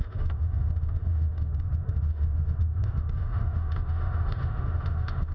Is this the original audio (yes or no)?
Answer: no